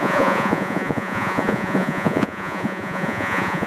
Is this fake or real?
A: fake